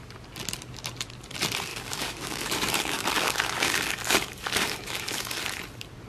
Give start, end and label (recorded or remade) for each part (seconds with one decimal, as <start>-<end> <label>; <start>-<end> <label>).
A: 0.0-1.7 recorded; 1.7-5.4 remade; 5.4-6.1 recorded